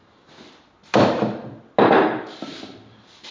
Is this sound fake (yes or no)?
no